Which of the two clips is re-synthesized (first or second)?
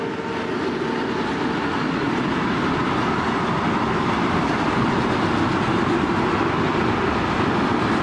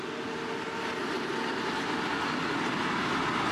first